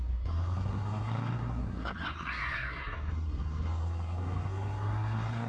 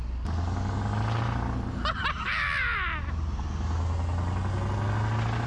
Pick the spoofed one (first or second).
first